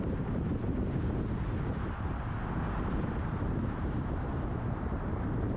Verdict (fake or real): fake